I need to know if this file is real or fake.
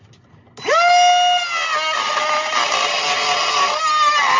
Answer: real